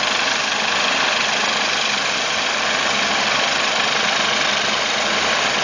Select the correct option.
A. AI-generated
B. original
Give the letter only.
B